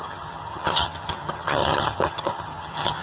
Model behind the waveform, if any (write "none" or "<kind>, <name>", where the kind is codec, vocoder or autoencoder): vocoder, HiFi-GAN